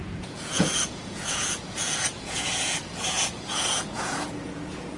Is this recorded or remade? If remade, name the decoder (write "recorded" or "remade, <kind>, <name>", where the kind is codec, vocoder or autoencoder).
remade, vocoder, Vocos